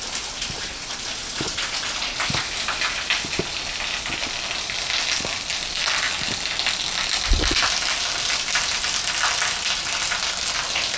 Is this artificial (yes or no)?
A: no